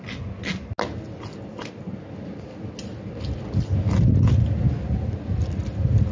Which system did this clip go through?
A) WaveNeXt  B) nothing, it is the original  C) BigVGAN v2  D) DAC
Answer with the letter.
B